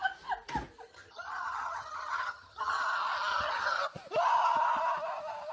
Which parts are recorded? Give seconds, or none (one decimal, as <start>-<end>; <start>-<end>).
0.0-0.9; 2.8-3.3; 3.8-5.5